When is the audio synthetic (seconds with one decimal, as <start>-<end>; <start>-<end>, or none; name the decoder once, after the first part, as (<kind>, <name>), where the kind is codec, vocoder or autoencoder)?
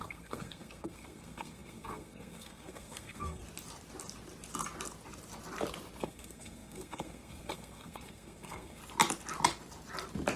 0.0-3.4 (codec, SNAC); 6.0-8.8